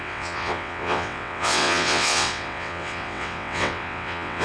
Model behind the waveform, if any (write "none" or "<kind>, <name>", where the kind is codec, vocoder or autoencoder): vocoder, WaveNeXt